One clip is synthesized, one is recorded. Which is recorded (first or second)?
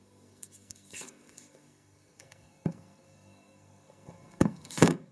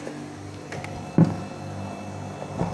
second